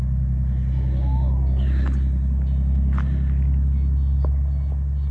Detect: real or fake real